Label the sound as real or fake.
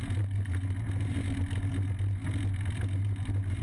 real